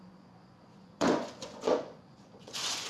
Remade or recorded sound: remade